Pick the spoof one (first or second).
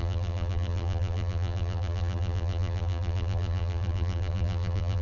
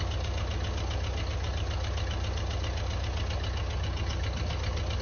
first